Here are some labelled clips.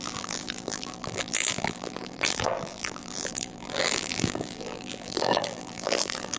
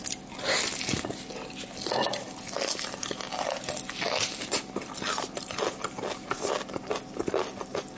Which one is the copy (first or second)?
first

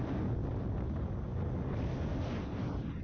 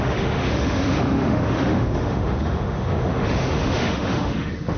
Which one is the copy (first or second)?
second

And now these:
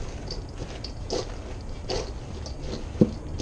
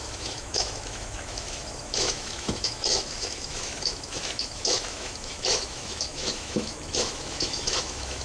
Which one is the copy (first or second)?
second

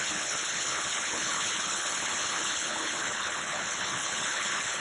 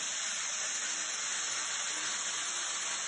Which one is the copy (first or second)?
first